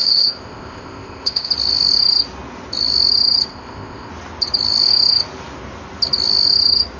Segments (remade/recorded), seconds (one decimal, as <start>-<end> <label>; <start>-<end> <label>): 0.0-1.5 remade; 1.5-3.5 recorded; 3.5-4.1 remade; 4.1-7.0 recorded